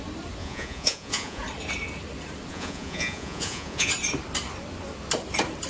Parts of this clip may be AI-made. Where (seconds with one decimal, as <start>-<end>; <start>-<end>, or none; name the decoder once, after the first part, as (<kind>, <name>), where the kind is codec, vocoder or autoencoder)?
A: 0.4-1.4 (vocoder, Vocos); 2.5-3.9